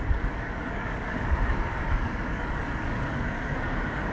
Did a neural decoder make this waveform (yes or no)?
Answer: yes